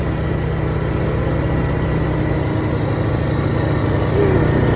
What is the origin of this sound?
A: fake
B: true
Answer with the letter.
B